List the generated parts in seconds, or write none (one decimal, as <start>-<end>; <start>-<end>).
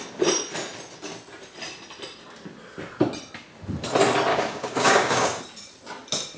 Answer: 4.3-5.4